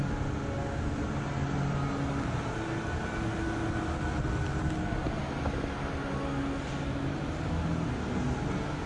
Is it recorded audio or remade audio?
recorded